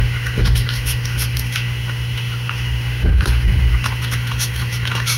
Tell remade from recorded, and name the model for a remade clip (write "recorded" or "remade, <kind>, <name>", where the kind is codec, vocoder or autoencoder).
remade, autoencoder, DAC-VAE